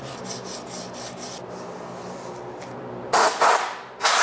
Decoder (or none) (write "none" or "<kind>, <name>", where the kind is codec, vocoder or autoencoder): none